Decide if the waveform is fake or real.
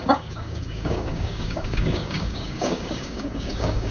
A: fake